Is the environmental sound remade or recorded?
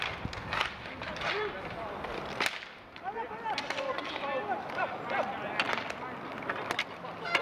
recorded